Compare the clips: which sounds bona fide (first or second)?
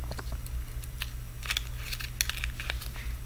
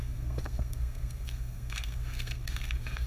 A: first